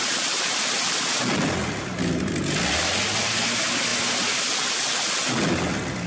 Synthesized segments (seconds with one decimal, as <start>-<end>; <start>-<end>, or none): none